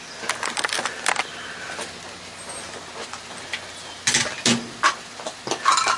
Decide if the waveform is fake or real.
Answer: real